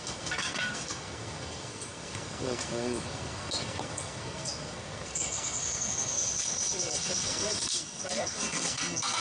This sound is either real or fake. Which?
fake